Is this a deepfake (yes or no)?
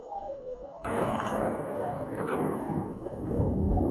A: yes